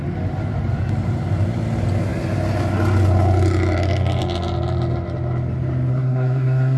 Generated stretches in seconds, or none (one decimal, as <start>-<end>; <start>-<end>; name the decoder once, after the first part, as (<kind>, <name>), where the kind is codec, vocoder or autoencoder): 5.9-6.8 (codec, SNAC)